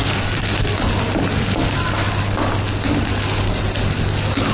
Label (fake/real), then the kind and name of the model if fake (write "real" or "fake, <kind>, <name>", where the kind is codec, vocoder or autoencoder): real